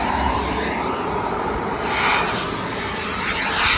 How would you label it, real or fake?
real